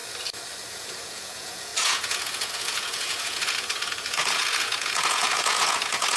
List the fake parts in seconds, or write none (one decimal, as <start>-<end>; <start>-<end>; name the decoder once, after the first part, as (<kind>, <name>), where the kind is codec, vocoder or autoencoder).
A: 0.7-6.2 (vocoder, Vocos)